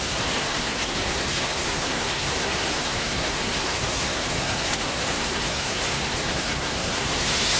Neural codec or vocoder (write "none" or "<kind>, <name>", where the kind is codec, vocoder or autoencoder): codec, SNAC